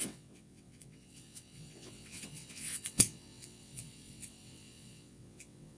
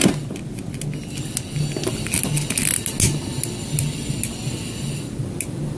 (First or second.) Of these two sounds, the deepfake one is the first